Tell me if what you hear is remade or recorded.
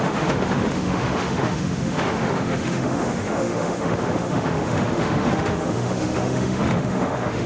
remade